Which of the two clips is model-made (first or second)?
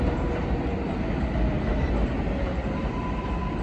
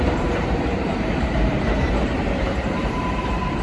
second